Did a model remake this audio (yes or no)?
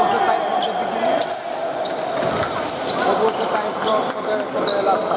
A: no